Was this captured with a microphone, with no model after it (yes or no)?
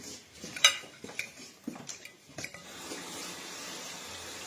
no